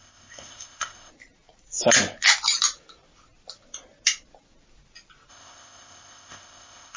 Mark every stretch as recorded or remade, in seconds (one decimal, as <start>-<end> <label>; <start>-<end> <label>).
0.0-1.1 remade; 1.1-5.3 recorded; 5.3-7.0 remade